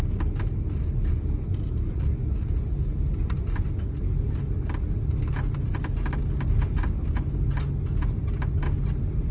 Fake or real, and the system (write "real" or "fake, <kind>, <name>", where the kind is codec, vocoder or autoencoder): real